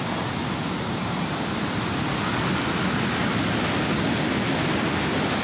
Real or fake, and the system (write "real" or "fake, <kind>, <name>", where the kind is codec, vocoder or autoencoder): real